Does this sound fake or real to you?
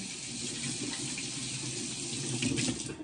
real